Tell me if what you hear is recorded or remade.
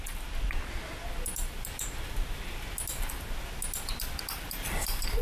recorded